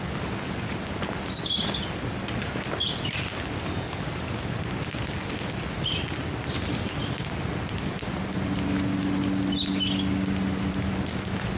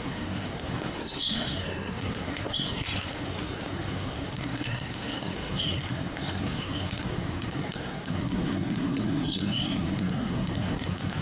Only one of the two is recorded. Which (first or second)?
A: first